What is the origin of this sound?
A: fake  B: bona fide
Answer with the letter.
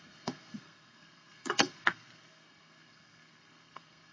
A